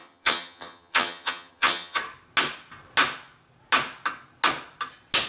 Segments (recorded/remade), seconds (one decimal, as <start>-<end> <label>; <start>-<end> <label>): 0.0-2.0 remade; 2.0-5.3 recorded